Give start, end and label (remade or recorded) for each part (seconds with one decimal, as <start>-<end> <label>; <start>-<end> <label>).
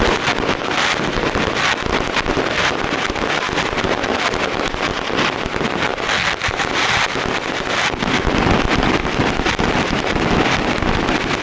0.0-11.4 recorded